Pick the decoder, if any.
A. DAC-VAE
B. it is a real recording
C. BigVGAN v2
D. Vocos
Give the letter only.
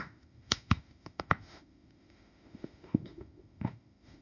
A